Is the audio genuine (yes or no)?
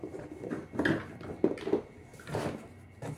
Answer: yes